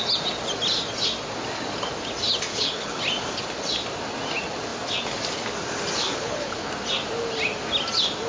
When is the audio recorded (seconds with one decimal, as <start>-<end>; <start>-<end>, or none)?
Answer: 0.0-2.5; 3.0-6.0; 6.7-8.3